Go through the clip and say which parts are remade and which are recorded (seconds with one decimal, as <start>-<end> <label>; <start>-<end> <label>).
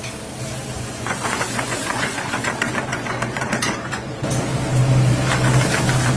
0.0-0.6 recorded; 0.6-2.5 remade; 2.5-2.9 recorded; 2.9-4.3 remade; 4.3-6.2 recorded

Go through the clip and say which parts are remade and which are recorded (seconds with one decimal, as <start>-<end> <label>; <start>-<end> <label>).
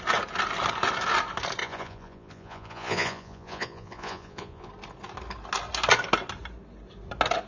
0.0-1.6 recorded; 1.6-4.7 remade; 4.7-7.5 recorded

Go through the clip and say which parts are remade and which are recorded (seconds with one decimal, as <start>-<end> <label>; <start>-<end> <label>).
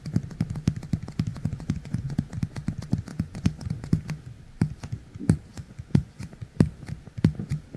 0.0-1.3 recorded; 1.3-2.3 remade; 2.3-3.1 recorded; 3.1-3.9 remade; 3.9-5.5 recorded; 5.5-6.3 remade; 6.3-7.8 recorded